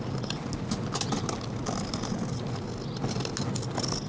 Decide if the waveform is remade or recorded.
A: recorded